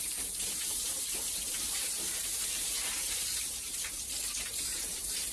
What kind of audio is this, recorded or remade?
remade